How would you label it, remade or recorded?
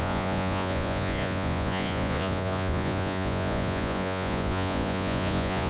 remade